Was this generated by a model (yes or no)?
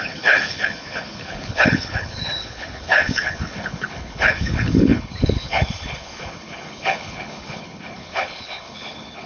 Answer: yes